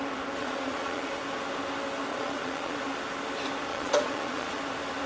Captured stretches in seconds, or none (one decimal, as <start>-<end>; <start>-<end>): 0.0-0.4; 1.1-2.1; 2.8-3.7; 4.6-5.1